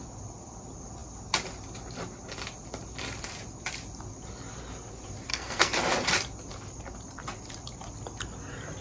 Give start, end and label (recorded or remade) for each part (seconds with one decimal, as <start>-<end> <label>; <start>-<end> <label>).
0.0-5.3 recorded; 5.3-5.8 remade; 5.8-8.8 recorded